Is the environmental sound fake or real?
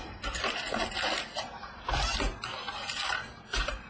fake